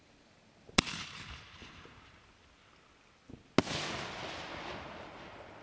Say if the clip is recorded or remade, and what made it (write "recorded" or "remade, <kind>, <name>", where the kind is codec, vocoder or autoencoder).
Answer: recorded